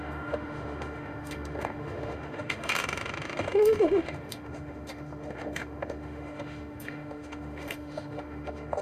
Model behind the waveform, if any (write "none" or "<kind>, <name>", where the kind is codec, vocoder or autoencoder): autoencoder, DAC-VAE